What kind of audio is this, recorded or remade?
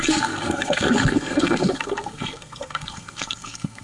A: remade